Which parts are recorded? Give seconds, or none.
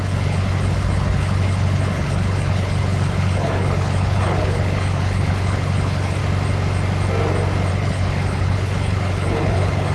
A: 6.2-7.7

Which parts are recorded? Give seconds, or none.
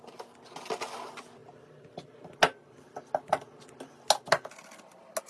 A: 0.0-5.3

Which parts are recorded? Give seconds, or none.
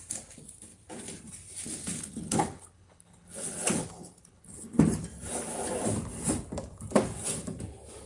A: 0.0-1.8; 4.8-8.1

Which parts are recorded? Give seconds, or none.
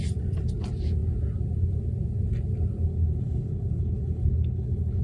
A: 0.0-2.9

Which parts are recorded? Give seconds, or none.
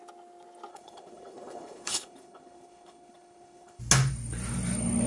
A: 0.0-0.7; 3.8-5.1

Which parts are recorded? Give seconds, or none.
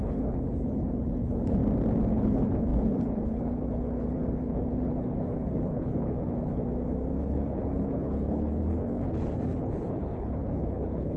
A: 1.6-2.1; 6.6-7.2